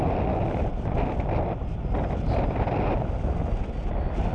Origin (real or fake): real